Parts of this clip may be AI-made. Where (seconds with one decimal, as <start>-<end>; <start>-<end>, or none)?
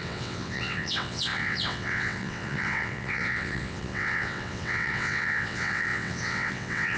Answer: 0.0-7.0